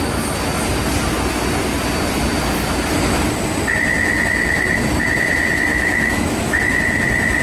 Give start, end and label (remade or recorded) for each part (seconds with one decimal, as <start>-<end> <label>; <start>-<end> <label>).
0.0-5.7 recorded; 5.7-6.8 remade; 6.8-7.4 recorded